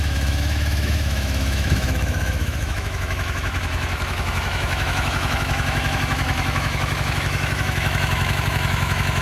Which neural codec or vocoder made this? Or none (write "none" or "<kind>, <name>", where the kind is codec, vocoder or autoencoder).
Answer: autoencoder, DAC-VAE